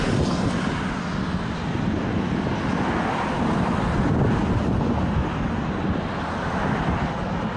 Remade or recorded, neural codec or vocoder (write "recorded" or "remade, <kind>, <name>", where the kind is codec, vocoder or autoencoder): recorded